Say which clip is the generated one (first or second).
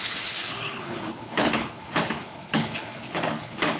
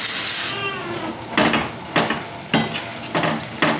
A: first